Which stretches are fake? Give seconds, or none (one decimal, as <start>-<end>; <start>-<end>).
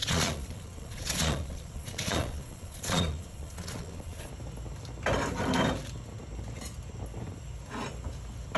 0.0-4.3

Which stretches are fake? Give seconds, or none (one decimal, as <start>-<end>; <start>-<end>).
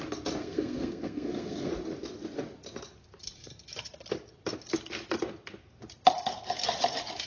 0.4-1.7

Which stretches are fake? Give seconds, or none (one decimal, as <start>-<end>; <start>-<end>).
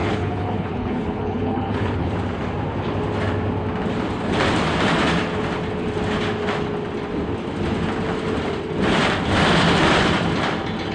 0.0-2.1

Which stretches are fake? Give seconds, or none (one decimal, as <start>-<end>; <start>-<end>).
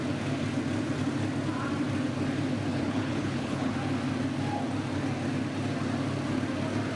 2.7-3.7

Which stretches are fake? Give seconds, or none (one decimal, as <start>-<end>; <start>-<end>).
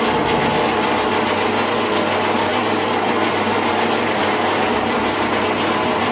2.5-4.2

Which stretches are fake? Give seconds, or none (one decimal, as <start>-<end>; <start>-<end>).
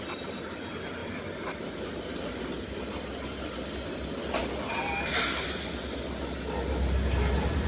1.0-1.6; 4.4-5.8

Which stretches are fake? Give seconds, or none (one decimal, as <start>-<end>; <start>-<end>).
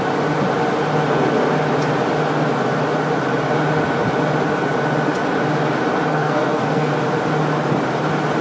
6.1-6.9